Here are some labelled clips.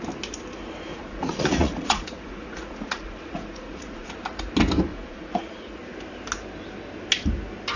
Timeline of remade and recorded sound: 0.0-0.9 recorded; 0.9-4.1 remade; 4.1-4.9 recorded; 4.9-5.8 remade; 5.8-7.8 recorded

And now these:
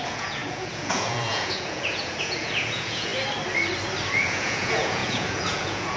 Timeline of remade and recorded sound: 0.0-3.1 remade; 3.1-4.1 recorded; 4.1-6.0 remade

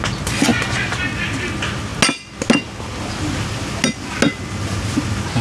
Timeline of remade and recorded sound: 0.0-5.4 recorded

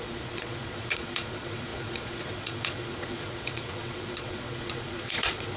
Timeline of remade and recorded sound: 0.0-5.6 remade

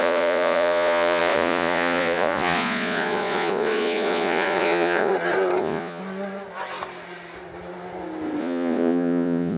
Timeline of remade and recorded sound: 0.0-5.1 remade; 5.1-5.6 recorded; 5.6-6.0 remade; 6.0-8.4 recorded; 8.4-9.6 remade